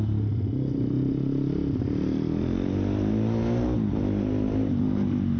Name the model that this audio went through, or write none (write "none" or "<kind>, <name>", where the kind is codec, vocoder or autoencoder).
none